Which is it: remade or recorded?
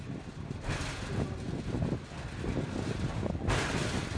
recorded